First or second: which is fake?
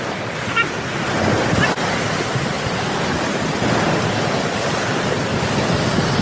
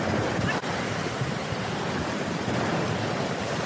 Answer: second